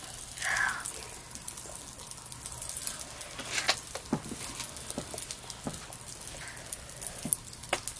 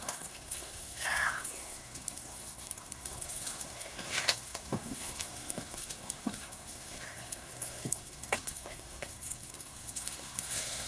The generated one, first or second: second